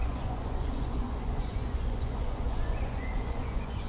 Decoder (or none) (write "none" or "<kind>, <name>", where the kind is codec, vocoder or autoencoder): vocoder, Vocos